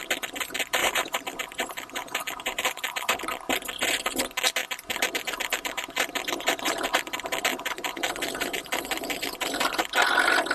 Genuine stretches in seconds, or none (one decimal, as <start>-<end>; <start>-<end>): 0.0-0.8; 3.2-4.6; 6.9-7.5; 9.9-10.5